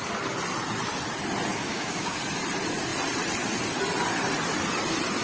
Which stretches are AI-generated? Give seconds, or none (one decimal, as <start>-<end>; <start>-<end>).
1.5-2.2